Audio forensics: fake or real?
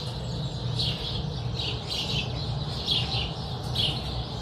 real